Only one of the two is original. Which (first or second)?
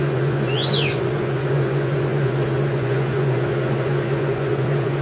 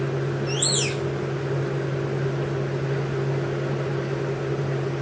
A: second